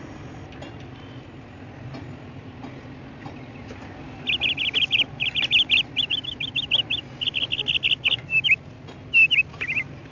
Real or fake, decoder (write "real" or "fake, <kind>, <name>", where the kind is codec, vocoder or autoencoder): real